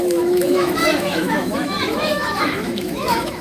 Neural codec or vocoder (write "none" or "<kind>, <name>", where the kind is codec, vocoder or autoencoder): autoencoder, DAC-VAE